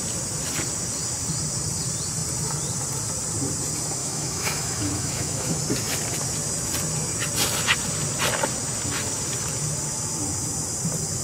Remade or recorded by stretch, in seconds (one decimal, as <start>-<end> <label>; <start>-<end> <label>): 0.0-4.0 recorded; 4.0-5.6 remade; 5.6-11.2 recorded